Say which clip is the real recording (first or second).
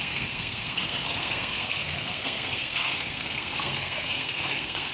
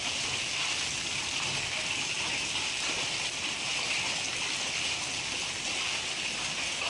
second